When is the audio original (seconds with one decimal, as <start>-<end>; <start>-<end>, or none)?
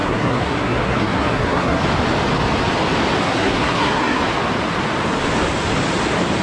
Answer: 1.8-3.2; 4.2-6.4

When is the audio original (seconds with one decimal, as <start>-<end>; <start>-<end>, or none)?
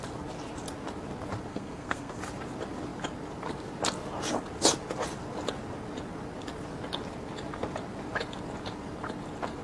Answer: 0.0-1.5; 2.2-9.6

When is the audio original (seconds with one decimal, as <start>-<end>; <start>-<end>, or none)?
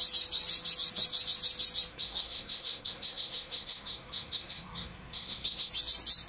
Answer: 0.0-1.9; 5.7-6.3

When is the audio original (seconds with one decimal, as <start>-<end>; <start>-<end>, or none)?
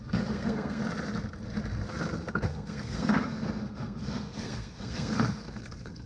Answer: 0.8-2.3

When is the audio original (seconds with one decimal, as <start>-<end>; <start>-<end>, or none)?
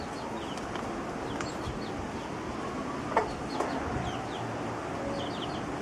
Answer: 0.0-5.8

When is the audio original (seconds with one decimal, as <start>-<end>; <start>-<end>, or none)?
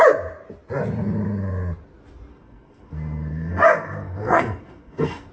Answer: 0.0-2.3